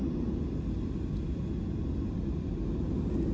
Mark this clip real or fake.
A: real